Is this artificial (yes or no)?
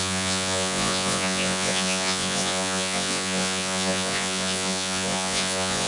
yes